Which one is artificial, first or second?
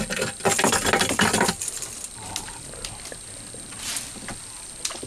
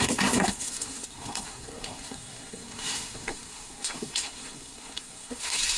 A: second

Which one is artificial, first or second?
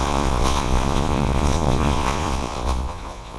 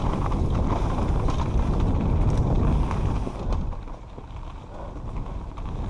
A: first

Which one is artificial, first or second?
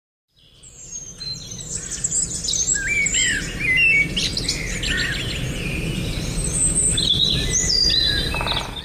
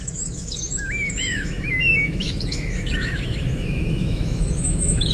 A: second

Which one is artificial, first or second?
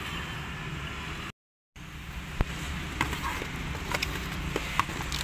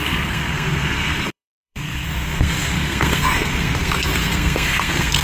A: second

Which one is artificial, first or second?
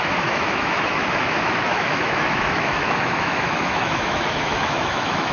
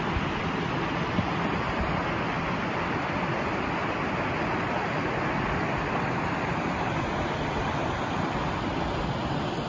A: first